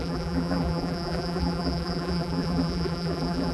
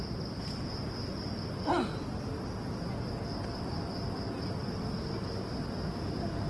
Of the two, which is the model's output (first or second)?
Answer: first